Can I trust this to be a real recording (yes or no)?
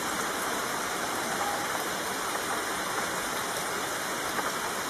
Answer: yes